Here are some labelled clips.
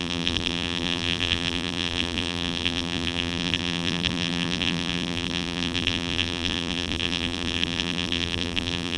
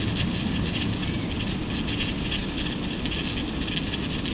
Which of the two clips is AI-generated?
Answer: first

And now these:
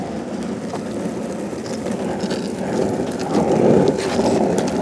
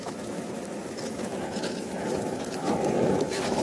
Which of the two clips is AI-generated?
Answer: second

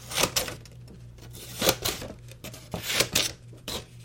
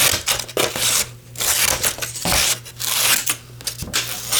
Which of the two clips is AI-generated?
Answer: first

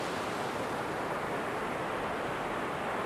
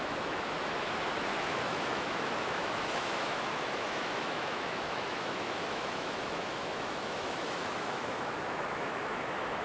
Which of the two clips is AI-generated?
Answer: second